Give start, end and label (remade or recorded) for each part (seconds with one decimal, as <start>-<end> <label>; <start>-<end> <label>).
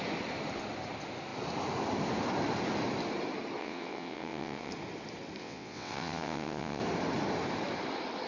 0.0-3.6 recorded; 3.6-4.7 remade; 4.7-5.4 recorded; 5.4-6.8 remade; 6.8-8.3 recorded